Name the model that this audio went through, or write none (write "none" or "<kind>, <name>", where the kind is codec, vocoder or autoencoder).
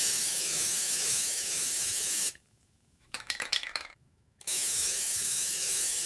autoencoder, DAC-VAE